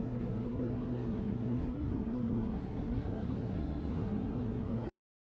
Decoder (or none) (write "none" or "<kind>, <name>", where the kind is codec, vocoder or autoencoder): codec, SNAC